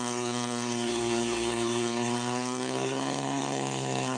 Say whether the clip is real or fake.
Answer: fake